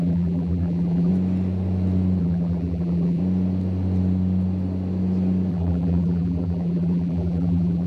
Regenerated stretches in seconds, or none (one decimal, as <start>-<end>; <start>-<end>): 0.0-1.1; 2.2-3.2; 5.5-7.9